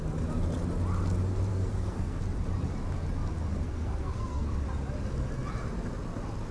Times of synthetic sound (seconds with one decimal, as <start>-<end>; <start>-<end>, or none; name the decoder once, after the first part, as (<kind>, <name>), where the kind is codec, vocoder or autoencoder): 1.5-2.2 (codec, SNAC); 3.5-4.5

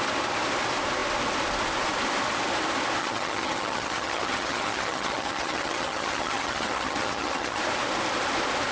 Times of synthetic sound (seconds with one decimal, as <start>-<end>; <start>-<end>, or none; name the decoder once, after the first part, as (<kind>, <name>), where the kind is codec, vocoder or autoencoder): 3.0-7.6 (vocoder, HiFi-GAN)